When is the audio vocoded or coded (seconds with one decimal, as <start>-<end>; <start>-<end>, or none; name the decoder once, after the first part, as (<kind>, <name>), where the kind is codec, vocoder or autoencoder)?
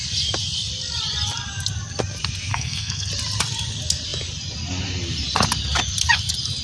2.5-3.1 (codec, SNAC)